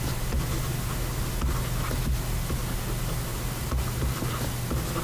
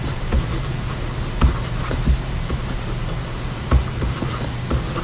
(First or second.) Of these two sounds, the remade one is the second